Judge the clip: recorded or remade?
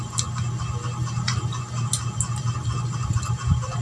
recorded